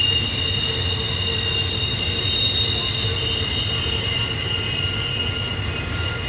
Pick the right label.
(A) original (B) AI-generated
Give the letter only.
A